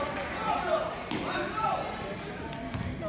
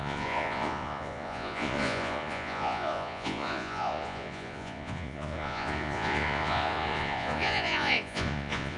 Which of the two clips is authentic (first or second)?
first